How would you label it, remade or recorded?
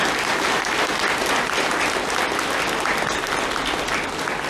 recorded